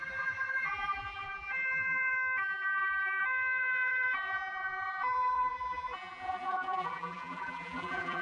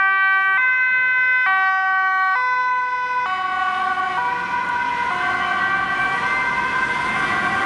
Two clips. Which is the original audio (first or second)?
second